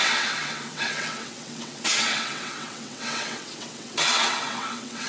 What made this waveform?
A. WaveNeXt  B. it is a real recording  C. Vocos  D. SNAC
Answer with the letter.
A